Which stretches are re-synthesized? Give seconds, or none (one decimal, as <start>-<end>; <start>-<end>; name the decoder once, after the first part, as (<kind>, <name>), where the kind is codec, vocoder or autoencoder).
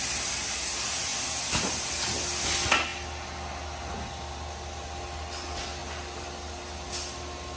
none